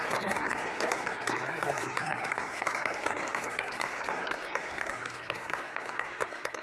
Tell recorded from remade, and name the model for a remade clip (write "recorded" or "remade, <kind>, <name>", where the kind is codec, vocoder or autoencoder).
remade, codec, SNAC